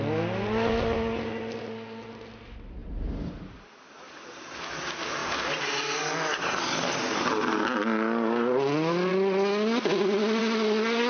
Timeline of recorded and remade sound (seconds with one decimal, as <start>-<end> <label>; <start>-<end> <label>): 0.0-2.8 recorded; 2.8-3.7 remade; 3.7-11.1 recorded